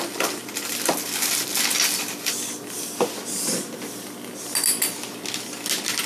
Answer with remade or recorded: recorded